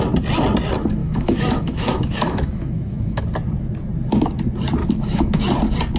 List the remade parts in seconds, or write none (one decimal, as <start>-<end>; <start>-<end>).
1.0-3.2; 4.8-5.4